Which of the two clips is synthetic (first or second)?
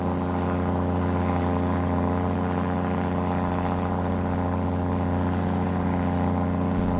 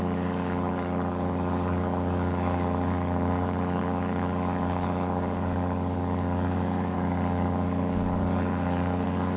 second